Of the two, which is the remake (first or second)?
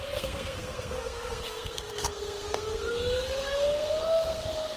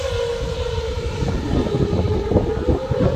first